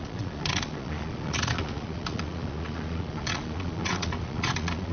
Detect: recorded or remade remade